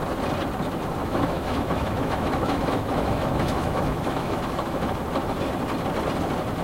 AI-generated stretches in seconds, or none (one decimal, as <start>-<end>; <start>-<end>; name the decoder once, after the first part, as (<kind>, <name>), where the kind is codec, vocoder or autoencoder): 1.0-5.0 (autoencoder, DAC-VAE)